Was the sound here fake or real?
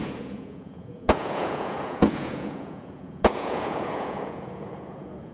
fake